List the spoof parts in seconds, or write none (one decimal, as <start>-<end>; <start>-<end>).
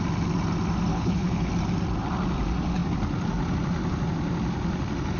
0.9-1.5